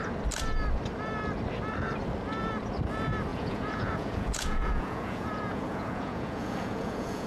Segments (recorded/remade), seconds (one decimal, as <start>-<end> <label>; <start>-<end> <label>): 0.0-3.3 recorded; 3.3-7.3 remade